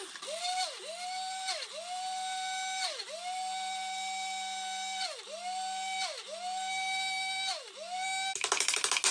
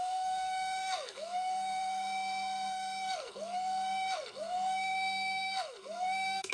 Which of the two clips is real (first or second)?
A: first